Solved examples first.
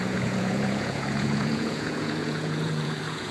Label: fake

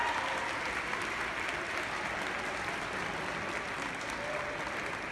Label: real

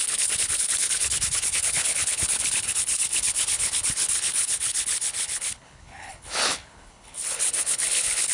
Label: fake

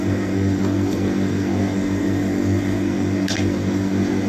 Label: fake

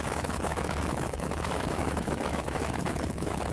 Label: fake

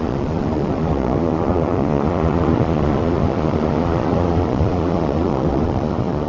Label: fake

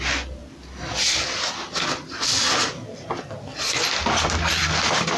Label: real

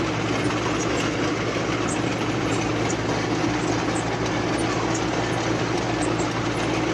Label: real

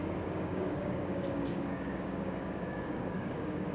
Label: fake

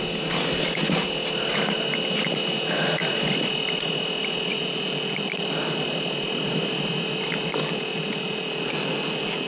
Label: real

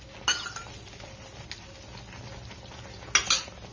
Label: real